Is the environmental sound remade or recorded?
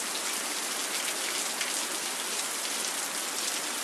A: recorded